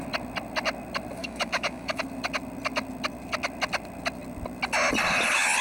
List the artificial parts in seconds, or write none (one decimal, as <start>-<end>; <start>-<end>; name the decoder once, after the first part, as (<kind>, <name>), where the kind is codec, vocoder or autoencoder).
1.2-2.0 (autoencoder, DAC-VAE)